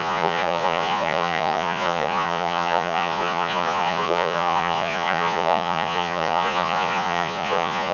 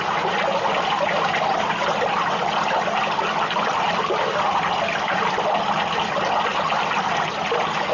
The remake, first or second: first